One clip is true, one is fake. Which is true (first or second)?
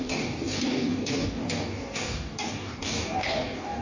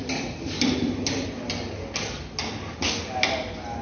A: second